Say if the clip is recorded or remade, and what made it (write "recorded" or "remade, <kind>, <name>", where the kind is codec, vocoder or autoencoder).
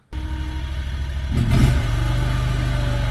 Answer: recorded